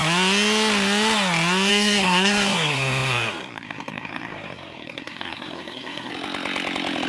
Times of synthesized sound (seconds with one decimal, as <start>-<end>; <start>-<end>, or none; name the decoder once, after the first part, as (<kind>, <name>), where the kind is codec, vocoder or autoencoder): 1.7-6.1 (codec, SNAC)